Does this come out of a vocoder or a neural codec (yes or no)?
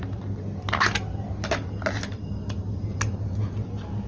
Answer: no